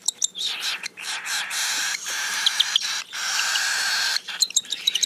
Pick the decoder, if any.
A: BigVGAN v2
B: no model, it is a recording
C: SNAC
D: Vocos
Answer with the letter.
A